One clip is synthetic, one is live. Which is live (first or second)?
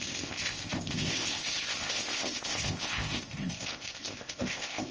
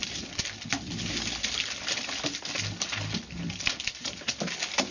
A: second